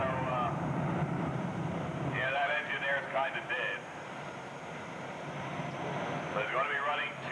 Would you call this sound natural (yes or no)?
no